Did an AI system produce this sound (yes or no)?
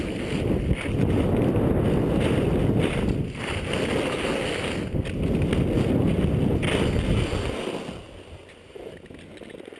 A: no